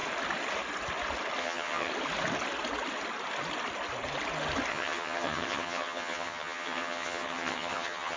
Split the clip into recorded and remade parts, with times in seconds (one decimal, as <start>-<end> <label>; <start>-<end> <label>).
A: 0.0-1.4 recorded; 1.4-1.9 remade; 1.9-4.7 recorded; 4.7-8.2 remade